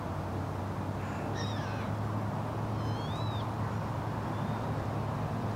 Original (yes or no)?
yes